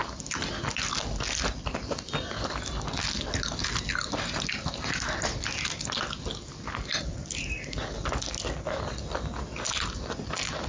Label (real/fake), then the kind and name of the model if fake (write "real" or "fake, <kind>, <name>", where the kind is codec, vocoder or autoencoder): real